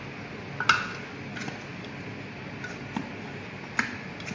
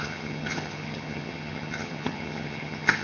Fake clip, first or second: second